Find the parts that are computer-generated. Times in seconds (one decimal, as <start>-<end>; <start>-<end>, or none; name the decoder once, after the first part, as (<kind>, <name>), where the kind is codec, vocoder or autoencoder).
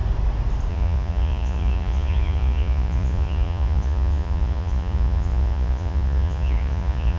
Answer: 0.7-7.2 (vocoder, Vocos)